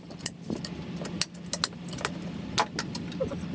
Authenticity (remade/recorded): recorded